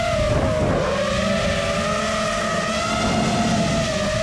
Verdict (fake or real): real